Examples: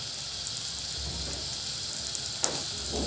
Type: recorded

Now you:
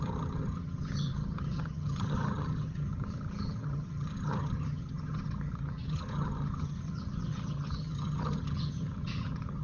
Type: remade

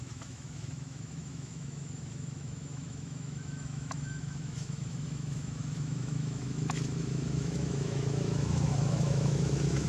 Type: remade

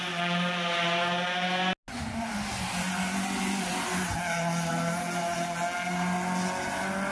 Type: recorded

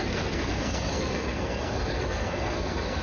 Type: remade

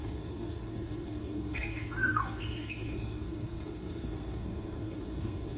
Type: remade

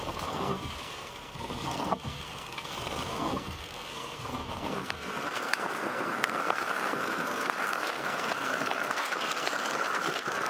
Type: remade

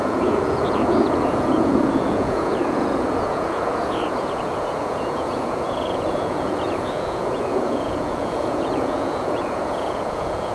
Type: remade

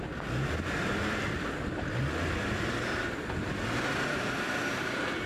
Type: recorded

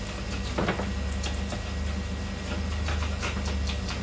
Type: recorded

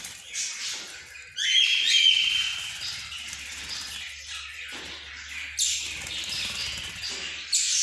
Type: recorded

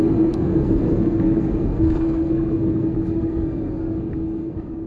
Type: remade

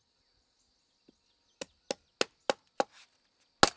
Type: recorded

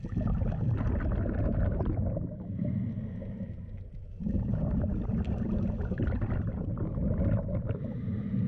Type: recorded